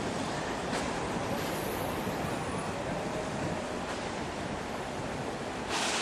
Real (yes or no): no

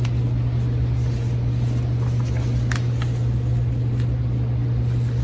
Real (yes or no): yes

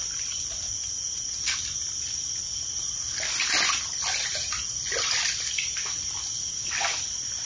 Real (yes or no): yes